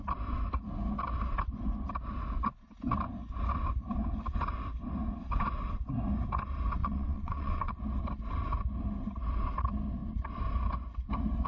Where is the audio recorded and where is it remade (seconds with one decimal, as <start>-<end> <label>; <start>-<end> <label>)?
0.0-6.8 recorded; 6.8-7.8 remade; 7.8-11.5 recorded